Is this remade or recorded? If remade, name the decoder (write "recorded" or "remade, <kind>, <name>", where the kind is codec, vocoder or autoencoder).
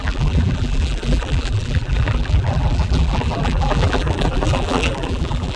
remade, vocoder, BigVGAN v2